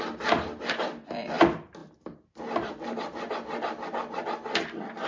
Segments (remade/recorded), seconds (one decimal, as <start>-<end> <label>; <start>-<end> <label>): 0.0-5.1 recorded